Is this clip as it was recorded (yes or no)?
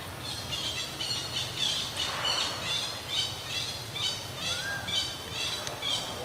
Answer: yes